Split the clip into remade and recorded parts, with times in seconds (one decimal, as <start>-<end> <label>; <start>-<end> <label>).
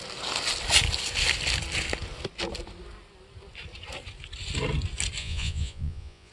0.0-5.2 recorded; 5.2-6.3 remade